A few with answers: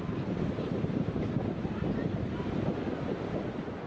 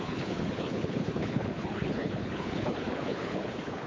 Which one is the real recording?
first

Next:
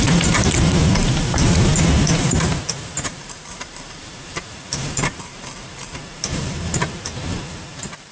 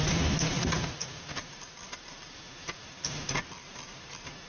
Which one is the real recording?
second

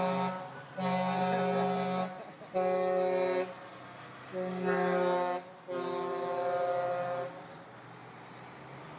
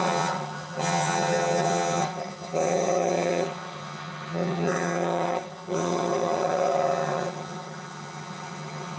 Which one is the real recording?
first